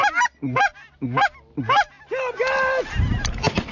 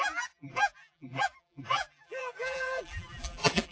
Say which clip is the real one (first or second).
first